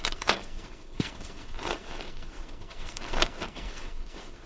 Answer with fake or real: fake